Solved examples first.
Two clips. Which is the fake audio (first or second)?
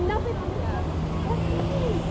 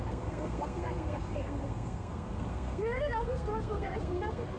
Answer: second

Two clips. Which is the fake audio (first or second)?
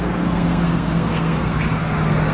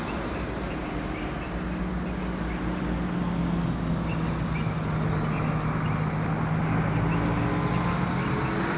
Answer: first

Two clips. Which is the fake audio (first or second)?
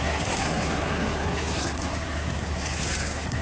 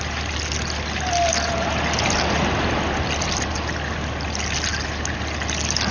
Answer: first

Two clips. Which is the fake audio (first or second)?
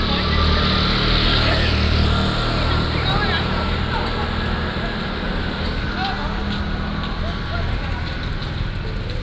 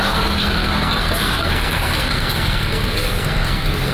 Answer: second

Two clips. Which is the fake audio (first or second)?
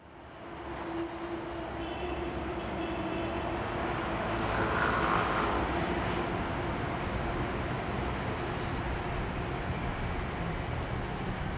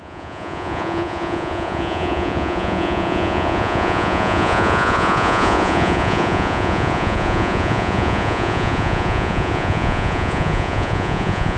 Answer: second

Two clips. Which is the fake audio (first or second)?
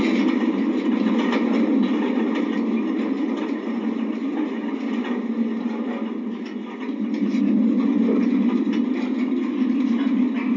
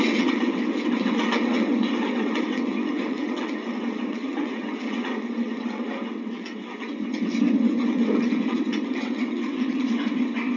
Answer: second